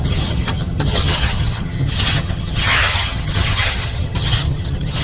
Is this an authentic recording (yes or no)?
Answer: no